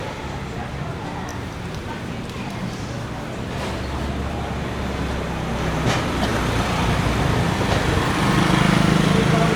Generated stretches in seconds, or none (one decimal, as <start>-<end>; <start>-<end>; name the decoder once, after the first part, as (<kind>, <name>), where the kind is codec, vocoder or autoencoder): 1.3-4.0 (vocoder, BigVGAN v2); 6.3-9.6